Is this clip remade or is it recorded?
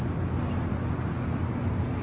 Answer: recorded